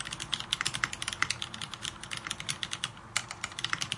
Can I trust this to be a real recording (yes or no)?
yes